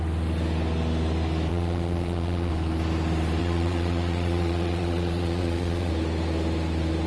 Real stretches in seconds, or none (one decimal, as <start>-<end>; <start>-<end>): 0.0-1.5; 2.5-3.4; 5.9-7.1